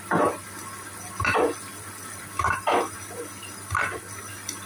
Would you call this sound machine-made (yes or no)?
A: no